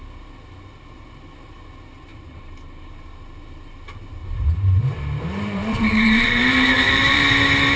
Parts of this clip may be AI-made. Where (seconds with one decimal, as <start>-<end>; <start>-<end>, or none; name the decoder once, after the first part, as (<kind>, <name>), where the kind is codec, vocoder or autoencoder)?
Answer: 2.1-2.9 (vocoder, BigVGAN v2); 4.2-7.3